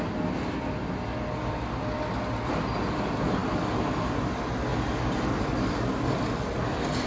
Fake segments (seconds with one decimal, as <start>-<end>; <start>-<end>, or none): none